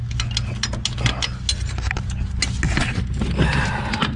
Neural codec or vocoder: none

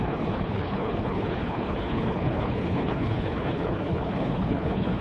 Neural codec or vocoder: codec, HILCodec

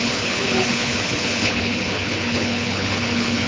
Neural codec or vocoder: codec, HILCodec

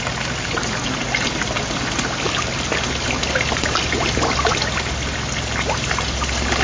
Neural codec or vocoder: none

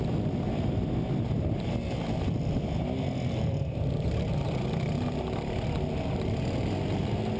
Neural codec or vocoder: none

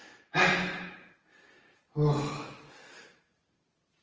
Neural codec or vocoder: none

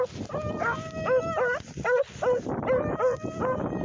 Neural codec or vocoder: none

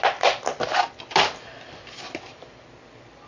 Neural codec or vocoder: none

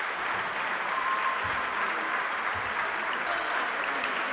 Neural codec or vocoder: none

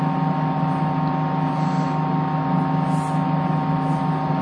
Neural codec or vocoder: none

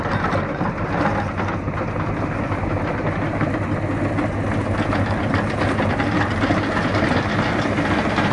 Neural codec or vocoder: none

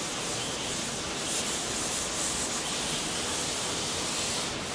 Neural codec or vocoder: none